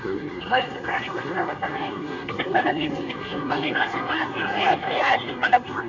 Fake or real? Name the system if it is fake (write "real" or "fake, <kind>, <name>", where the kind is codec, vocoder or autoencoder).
fake, codec, SNAC